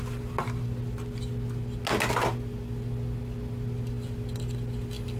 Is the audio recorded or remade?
recorded